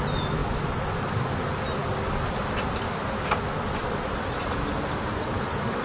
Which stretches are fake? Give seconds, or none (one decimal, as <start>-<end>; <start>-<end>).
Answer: none